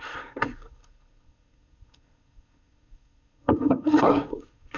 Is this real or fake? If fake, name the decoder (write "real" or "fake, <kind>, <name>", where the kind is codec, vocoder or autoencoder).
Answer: fake, codec, SNAC